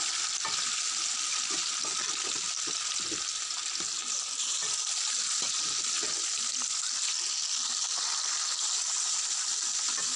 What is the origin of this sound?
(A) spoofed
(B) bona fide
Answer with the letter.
B